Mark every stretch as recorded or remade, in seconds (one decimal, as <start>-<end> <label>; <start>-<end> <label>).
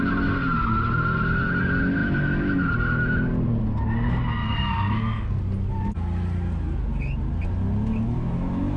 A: 0.0-4.4 recorded; 4.4-5.4 remade; 5.4-8.8 recorded